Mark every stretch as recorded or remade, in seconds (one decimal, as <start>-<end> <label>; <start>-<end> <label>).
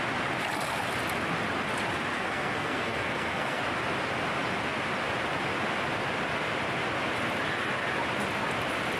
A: 0.0-2.1 recorded; 2.1-3.6 remade; 3.6-9.0 recorded